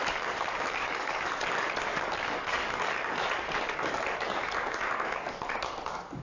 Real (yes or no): no